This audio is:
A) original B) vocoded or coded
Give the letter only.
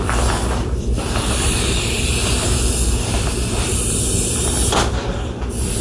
B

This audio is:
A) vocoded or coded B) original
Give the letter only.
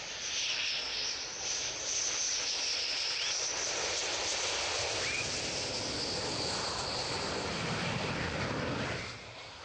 B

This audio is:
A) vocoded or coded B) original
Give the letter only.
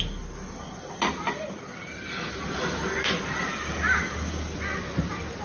B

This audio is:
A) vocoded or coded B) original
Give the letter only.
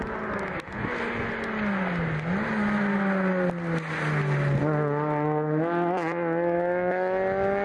B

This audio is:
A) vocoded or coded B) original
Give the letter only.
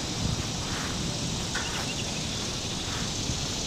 B